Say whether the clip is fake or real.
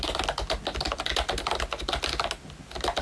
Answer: real